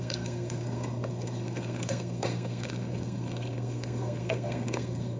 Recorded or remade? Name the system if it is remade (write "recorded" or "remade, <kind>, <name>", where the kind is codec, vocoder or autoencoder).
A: remade, codec, SNAC